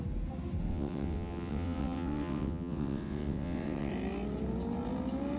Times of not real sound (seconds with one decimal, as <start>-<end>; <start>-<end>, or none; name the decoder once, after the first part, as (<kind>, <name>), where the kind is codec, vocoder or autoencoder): 0.7-3.9 (vocoder, WaveNeXt)